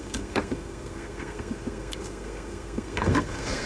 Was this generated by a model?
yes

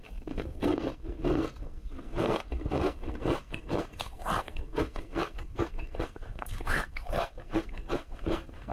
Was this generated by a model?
yes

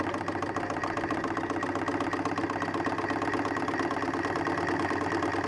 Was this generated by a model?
no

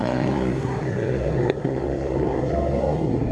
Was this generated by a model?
yes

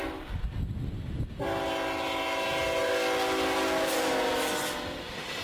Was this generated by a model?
no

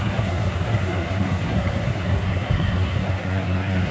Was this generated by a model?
yes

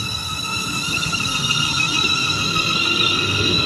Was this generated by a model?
yes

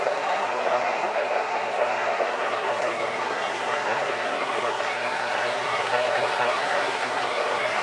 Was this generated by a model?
yes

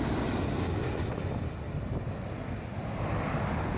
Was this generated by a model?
no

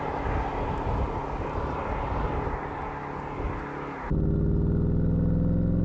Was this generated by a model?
no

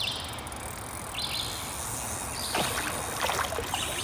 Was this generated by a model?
no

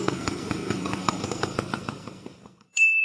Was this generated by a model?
yes